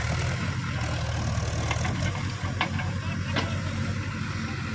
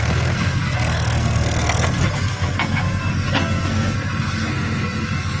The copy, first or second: second